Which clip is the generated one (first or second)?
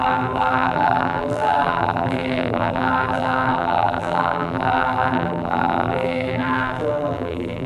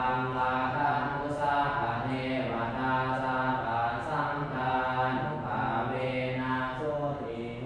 first